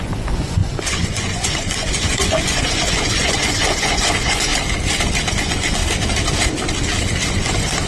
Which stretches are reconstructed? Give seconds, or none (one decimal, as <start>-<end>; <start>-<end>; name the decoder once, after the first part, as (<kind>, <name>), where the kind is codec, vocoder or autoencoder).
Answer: 0.0-4.5 (vocoder, Vocos); 5.3-5.8; 7.3-7.9